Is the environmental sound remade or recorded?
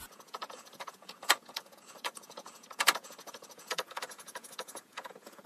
remade